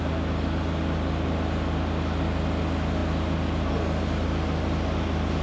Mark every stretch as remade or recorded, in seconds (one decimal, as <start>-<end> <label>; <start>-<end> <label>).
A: 0.0-5.4 recorded